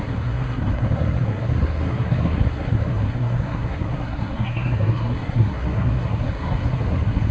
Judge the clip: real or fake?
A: fake